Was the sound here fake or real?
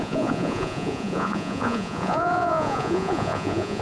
fake